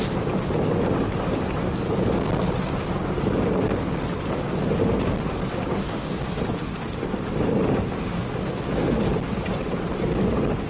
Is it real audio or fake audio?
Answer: real